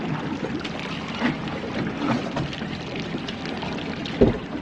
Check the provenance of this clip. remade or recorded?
recorded